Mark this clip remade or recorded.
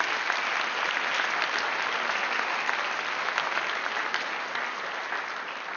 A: recorded